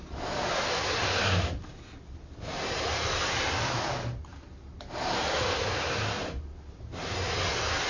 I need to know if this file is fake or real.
real